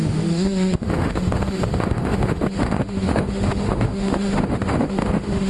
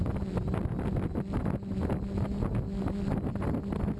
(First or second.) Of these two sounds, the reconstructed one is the first